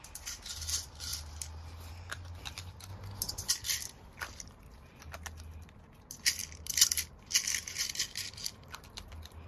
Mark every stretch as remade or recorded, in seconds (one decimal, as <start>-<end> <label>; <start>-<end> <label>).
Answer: 0.0-9.5 recorded